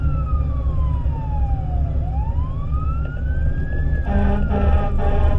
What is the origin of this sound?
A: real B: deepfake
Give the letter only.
A